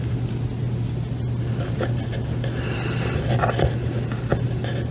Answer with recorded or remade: recorded